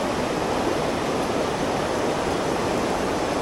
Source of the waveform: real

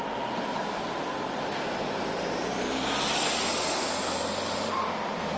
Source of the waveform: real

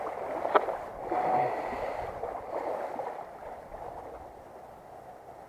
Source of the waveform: real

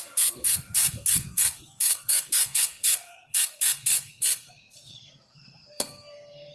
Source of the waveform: fake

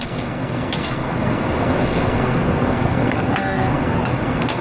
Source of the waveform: fake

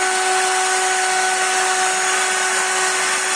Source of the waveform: real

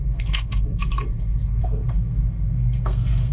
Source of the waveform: fake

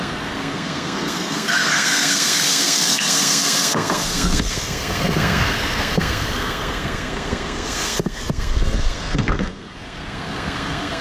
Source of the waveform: fake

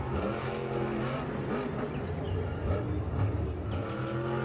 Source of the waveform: real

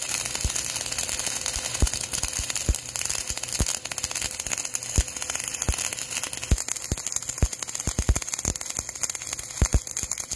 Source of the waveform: real